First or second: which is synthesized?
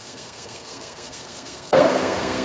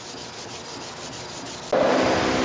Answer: first